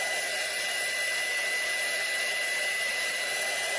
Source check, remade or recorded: remade